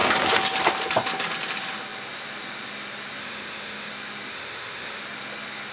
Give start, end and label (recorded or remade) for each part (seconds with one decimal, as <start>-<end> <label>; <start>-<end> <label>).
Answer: 0.0-3.2 recorded; 3.2-3.9 remade; 3.9-4.3 recorded; 4.3-5.0 remade; 5.0-5.7 recorded

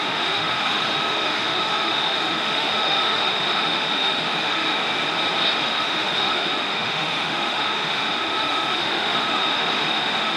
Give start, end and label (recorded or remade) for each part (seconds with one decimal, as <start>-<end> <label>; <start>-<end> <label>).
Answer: 0.0-4.8 remade; 4.8-5.6 recorded; 5.6-10.4 remade

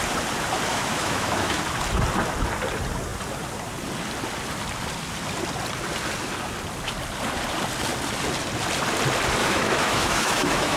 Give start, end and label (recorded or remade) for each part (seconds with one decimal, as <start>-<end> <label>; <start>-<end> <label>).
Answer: 0.0-0.7 recorded; 0.7-1.6 remade; 1.6-9.4 recorded; 9.4-10.8 remade

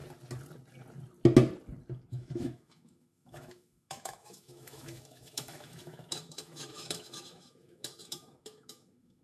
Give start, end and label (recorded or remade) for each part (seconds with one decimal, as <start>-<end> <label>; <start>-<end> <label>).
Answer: 0.0-2.1 recorded; 2.1-9.2 remade

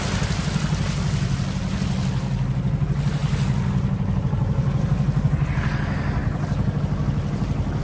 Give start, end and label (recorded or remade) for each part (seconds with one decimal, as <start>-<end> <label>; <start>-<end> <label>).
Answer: 0.0-7.8 recorded

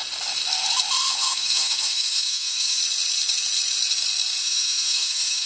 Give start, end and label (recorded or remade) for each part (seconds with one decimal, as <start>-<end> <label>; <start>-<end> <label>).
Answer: 0.0-1.1 recorded; 1.1-2.8 remade; 2.8-4.4 recorded; 4.4-5.5 remade